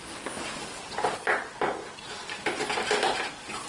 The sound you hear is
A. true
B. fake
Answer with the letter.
A